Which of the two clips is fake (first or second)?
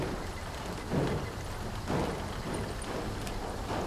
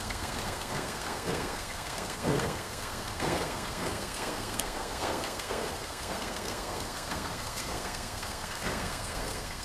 second